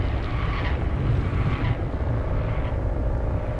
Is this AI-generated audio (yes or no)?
no